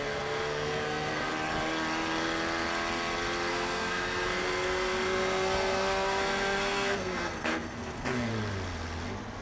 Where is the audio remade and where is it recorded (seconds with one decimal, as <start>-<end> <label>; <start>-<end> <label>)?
0.0-1.3 remade; 1.3-3.5 recorded; 3.5-8.3 remade; 8.3-9.4 recorded

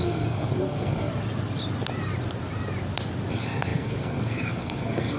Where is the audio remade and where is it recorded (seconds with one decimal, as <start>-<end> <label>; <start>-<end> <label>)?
0.0-1.1 remade; 1.1-3.3 recorded; 3.3-5.2 remade

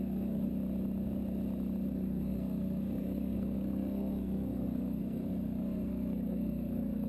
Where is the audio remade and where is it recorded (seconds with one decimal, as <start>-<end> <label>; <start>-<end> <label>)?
0.0-0.5 remade; 0.5-1.9 recorded; 1.9-7.1 remade

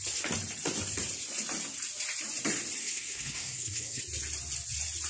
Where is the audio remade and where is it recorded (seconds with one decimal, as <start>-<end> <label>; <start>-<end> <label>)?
0.0-2.8 recorded; 2.8-4.0 remade; 4.0-5.1 recorded

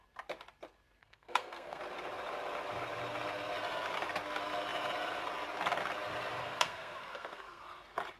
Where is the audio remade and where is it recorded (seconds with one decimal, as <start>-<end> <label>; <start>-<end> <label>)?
0.0-1.0 recorded; 1.0-1.8 remade; 1.8-6.4 recorded; 6.4-7.6 remade; 7.6-8.2 recorded

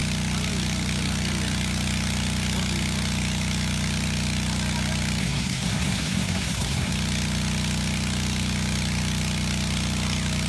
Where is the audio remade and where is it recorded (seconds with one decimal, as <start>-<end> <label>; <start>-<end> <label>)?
0.0-5.2 recorded; 5.2-6.9 remade; 6.9-10.5 recorded

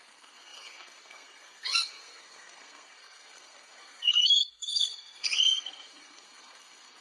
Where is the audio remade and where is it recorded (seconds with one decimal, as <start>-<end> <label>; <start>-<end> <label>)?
0.0-7.0 remade

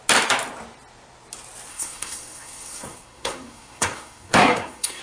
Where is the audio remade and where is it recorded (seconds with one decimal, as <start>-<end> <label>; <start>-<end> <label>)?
0.0-1.7 recorded; 1.7-5.0 remade